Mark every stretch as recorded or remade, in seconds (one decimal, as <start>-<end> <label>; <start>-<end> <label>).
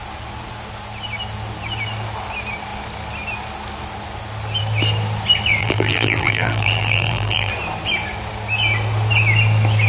0.0-5.6 recorded; 5.6-7.5 remade; 7.5-9.9 recorded